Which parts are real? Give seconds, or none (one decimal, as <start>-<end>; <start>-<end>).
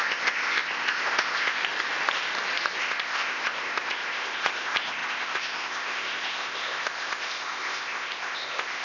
1.6-2.8